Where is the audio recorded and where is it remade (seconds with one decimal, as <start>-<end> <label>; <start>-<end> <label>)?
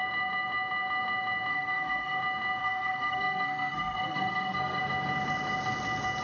0.0-1.5 recorded; 1.5-2.2 remade; 2.2-2.6 recorded; 2.6-4.8 remade; 4.8-6.2 recorded